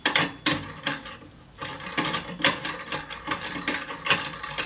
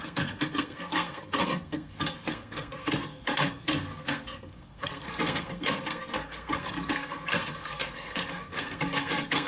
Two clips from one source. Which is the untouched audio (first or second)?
first